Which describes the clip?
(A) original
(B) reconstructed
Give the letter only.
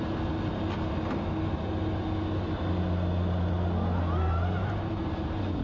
A